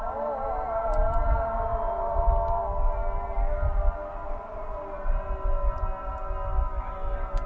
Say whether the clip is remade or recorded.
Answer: recorded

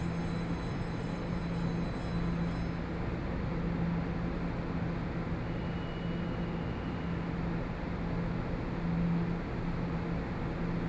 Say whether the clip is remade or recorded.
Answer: recorded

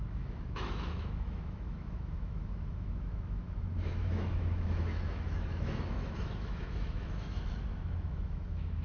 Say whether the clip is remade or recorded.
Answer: remade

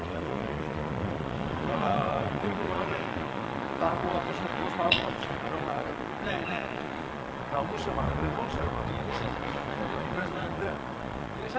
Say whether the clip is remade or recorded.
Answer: remade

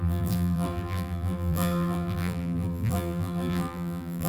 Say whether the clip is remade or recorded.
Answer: remade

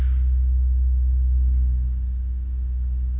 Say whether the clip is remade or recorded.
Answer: recorded